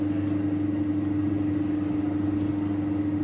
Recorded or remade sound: recorded